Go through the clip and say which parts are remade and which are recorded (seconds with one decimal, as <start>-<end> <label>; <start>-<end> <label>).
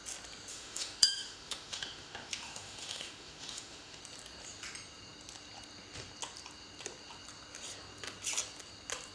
0.0-0.5 recorded; 0.5-4.0 remade; 4.0-9.1 recorded